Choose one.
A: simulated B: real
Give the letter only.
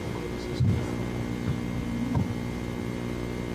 B